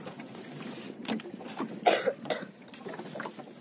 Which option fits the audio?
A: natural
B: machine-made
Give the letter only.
A